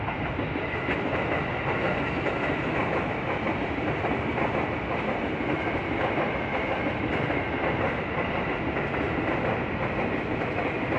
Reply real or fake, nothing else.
real